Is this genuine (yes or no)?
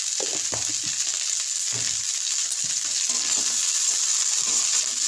yes